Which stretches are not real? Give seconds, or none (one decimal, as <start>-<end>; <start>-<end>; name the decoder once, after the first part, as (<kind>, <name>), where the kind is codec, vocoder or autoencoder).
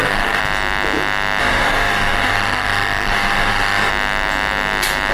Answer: 0.0-0.4 (autoencoder, DAC-VAE); 1.4-3.9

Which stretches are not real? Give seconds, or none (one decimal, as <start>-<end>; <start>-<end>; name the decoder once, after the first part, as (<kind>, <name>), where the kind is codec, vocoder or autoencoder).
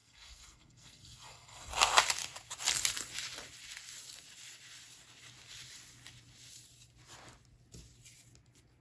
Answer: 0.0-1.7 (codec, SNAC)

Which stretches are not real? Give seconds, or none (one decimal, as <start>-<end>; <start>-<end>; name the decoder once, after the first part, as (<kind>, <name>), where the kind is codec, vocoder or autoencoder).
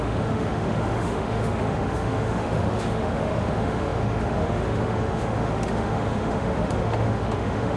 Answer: 0.0-7.8 (autoencoder, DAC-VAE)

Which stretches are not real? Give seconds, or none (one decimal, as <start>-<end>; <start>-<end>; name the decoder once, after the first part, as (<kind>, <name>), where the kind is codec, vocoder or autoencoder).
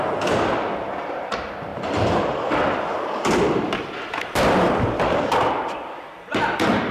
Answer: 0.0-6.9 (vocoder, BigVGAN v2)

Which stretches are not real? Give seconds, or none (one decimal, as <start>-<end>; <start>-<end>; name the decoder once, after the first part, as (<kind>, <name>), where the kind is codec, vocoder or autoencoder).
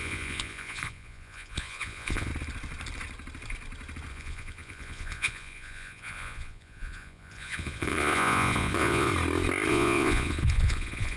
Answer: 0.0-2.3 (vocoder, Vocos); 4.1-9.1; 9.7-11.2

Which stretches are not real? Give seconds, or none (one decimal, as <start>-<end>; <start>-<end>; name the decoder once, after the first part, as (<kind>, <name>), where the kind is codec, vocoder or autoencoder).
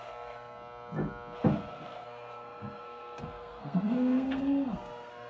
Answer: 1.7-5.3 (codec, SNAC)